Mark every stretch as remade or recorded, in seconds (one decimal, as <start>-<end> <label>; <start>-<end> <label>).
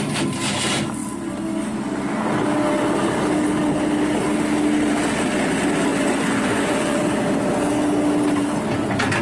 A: 0.0-5.9 recorded; 5.9-7.0 remade; 7.0-9.2 recorded